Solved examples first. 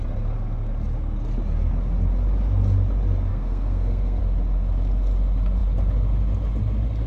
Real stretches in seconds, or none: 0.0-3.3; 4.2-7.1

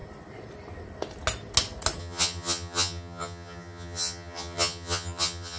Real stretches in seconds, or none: 0.0-2.0

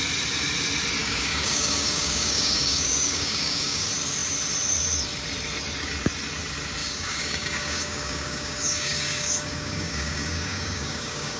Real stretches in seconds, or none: 0.0-1.0; 3.8-6.8

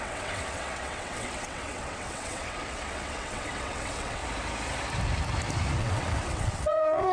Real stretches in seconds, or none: 4.2-5.8

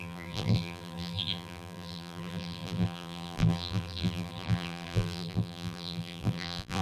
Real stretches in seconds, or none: none

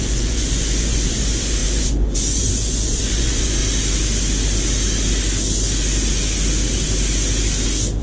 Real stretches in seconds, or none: 3.6-8.0

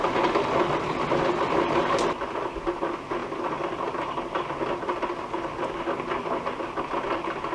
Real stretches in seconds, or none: 0.0-7.5